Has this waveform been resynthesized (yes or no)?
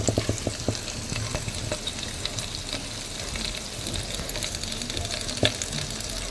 no